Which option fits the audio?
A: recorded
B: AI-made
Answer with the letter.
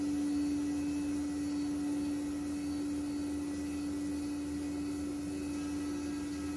A